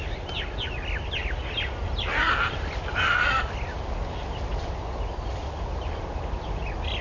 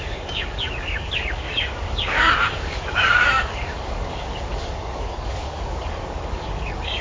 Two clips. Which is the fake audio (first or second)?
second